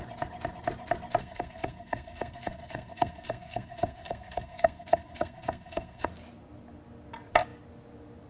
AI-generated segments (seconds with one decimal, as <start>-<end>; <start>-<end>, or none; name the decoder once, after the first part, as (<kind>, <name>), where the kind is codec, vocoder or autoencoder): 1.2-6.1 (codec, SNAC)